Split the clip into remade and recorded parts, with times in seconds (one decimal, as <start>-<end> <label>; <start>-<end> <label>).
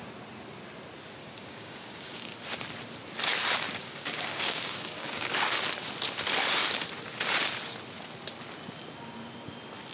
0.0-1.2 recorded; 1.2-2.3 remade; 2.3-3.8 recorded; 3.8-5.6 remade; 5.6-9.9 recorded